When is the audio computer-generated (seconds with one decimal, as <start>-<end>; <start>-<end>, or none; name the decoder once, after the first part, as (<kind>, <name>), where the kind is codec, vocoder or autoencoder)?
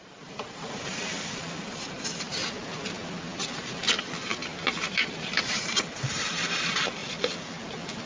0.0-2.4 (vocoder, BigVGAN v2); 3.9-4.3; 4.9-7.0